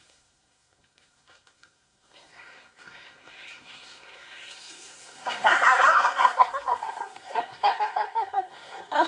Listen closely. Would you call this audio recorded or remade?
remade